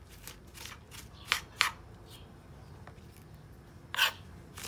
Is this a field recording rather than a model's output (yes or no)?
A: yes